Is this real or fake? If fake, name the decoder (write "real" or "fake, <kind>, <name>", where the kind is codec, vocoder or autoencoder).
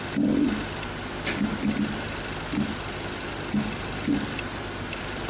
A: real